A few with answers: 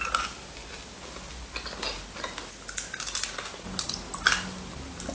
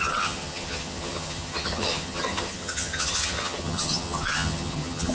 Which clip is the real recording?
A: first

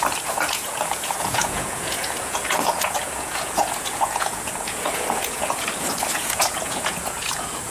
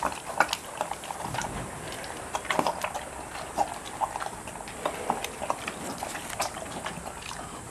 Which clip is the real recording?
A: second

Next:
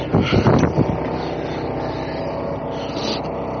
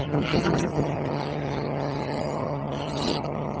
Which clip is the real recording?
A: first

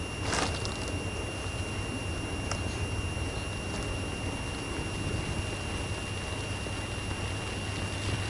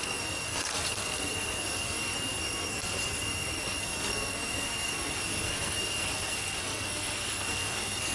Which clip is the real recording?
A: first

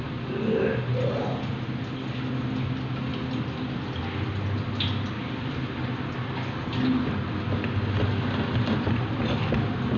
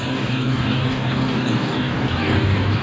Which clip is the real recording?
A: first